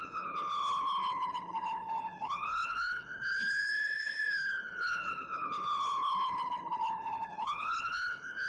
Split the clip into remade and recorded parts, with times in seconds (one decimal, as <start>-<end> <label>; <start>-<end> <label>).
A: 0.0-8.5 remade